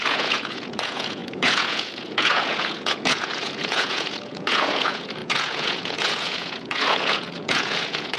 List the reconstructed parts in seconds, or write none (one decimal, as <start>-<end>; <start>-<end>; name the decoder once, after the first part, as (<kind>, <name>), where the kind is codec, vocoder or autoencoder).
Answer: 0.0-8.2 (vocoder, Vocos)